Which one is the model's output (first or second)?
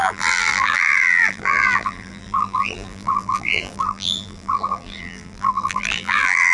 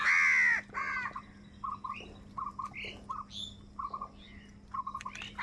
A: first